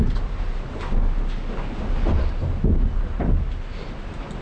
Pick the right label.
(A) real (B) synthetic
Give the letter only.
A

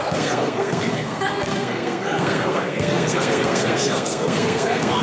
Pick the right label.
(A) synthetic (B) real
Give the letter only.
A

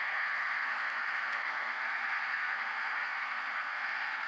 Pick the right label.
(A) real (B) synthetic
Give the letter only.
B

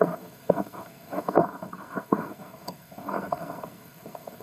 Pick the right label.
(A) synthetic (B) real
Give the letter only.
A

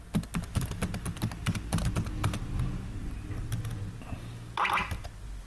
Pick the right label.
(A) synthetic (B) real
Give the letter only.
B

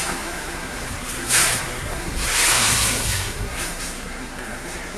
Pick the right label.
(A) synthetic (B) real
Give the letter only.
A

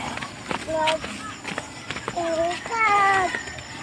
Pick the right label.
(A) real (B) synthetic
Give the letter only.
A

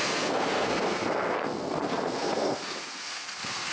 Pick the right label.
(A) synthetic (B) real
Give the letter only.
A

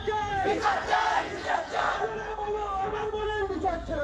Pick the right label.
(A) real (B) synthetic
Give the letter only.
B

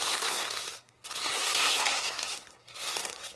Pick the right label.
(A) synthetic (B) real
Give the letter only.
A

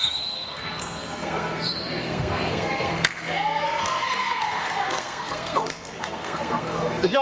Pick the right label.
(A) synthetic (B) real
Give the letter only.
A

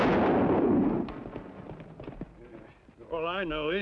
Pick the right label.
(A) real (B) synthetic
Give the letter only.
A